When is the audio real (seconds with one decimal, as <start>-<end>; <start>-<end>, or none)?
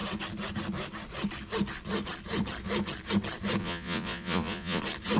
0.0-3.6; 4.8-5.2